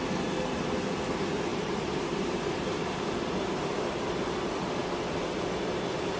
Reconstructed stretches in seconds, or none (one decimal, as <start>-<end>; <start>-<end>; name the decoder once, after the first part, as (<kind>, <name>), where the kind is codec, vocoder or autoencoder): 1.5-3.5 (vocoder, BigVGAN v2)